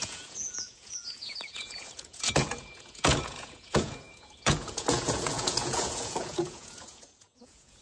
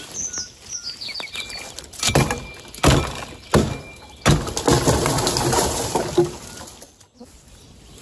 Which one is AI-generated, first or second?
first